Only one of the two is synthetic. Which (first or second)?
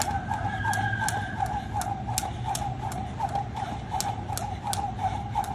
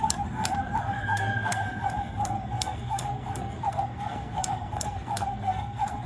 second